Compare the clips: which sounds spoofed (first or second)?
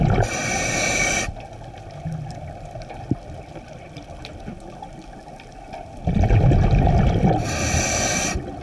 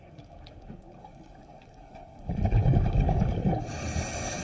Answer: second